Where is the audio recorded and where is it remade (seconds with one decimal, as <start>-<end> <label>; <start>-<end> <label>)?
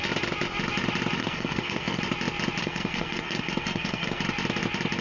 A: 0.0-1.2 recorded; 1.2-2.0 remade; 2.0-2.6 recorded; 2.6-4.2 remade; 4.2-5.0 recorded